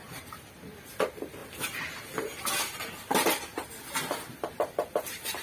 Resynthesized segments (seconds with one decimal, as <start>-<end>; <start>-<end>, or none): 0.0-1.4; 4.6-5.4